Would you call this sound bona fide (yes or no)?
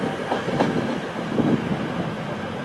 yes